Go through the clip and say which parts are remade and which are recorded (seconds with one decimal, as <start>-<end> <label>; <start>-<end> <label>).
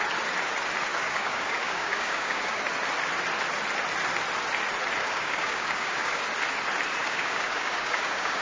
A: 0.0-0.9 recorded; 0.9-2.6 remade; 2.6-5.0 recorded; 5.0-6.2 remade; 6.2-7.0 recorded; 7.0-8.4 remade